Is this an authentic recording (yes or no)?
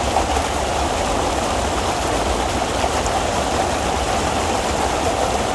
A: yes